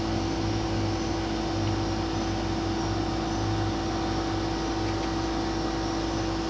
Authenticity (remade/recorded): recorded